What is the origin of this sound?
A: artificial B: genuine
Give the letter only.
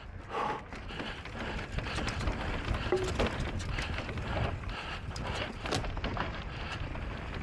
B